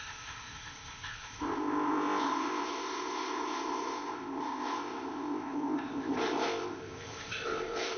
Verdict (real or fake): fake